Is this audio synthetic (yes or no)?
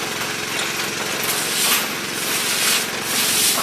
no